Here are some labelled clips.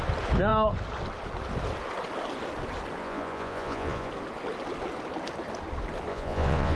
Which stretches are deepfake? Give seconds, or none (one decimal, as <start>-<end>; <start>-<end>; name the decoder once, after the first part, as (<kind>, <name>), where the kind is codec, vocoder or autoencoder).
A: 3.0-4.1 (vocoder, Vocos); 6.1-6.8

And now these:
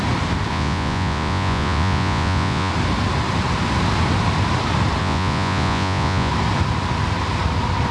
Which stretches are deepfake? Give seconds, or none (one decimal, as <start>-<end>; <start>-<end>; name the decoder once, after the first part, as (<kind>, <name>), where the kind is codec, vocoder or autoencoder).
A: 0.5-2.7 (vocoder, Vocos); 5.0-6.3

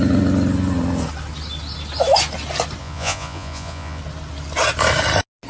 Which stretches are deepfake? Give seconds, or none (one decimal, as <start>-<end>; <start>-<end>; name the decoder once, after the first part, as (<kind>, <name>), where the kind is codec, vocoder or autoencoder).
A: 2.8-4.0 (vocoder, Vocos)

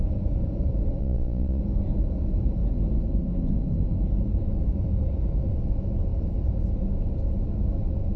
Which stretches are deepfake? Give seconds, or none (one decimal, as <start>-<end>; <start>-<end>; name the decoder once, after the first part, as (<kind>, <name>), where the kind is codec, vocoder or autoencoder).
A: 1.0-1.6 (vocoder, Vocos)

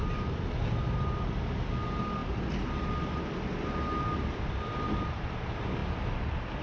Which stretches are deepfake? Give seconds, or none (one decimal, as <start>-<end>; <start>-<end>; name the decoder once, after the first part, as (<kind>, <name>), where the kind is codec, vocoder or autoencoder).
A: none

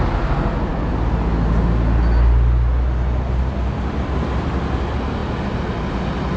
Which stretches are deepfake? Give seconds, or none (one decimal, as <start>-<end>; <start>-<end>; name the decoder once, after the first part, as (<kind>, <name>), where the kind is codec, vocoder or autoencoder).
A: none

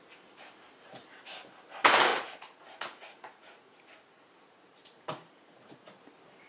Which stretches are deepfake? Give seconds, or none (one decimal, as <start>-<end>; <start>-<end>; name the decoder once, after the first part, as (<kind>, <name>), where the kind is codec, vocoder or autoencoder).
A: 2.1-6.0 (vocoder, Vocos)